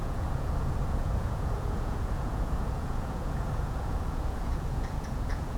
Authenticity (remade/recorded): remade